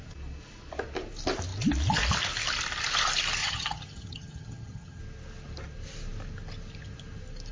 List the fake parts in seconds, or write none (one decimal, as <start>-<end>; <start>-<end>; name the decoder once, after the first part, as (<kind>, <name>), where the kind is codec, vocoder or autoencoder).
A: 3.4-5.0 (vocoder, HiFi-GAN)